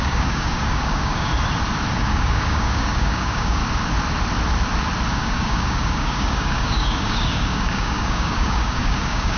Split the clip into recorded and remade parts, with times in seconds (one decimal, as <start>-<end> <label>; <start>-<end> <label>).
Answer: 0.0-1.3 remade; 1.3-2.0 recorded; 2.0-3.6 remade; 3.6-5.1 recorded; 5.1-9.4 remade